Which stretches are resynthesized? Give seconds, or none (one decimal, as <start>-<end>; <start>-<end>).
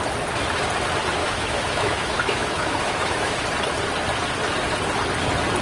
1.2-3.4